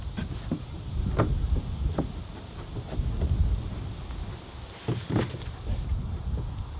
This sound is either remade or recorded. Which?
recorded